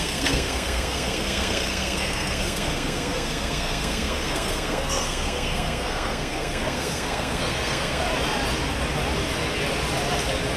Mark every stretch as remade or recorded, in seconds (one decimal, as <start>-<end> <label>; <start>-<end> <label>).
0.0-8.0 remade; 8.0-10.6 recorded